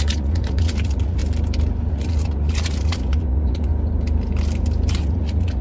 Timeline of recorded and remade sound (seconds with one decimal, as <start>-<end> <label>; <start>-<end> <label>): 0.0-1.2 remade; 1.2-1.9 recorded; 1.9-3.7 remade; 3.7-5.0 recorded; 5.0-5.6 remade

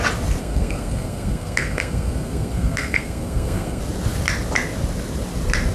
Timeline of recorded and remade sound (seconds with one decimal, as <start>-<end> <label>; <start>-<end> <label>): 0.0-0.4 recorded; 0.4-3.8 remade; 3.8-5.7 recorded

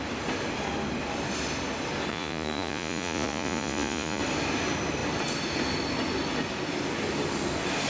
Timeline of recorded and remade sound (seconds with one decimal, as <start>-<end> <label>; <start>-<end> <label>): 0.0-2.1 recorded; 2.1-4.2 remade; 4.2-7.9 recorded

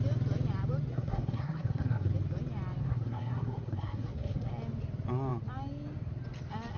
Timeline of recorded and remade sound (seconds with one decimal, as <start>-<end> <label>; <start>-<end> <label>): 0.0-0.9 recorded; 0.9-2.1 remade; 2.1-2.8 recorded; 2.8-4.5 remade; 4.5-6.8 recorded